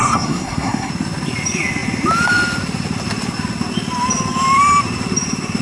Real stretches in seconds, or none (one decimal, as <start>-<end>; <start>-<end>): 0.9-5.6